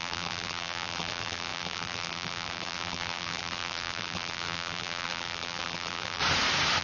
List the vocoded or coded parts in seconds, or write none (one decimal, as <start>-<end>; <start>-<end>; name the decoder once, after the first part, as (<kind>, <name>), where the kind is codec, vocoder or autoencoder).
0.0-6.2 (vocoder, BigVGAN v2)